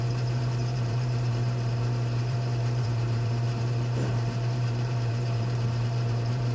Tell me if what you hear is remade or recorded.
remade